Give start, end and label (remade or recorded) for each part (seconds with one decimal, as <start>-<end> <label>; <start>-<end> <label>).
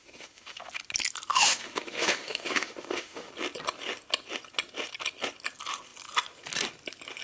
0.0-0.7 remade; 0.7-1.3 recorded; 1.3-3.3 remade; 3.3-7.2 recorded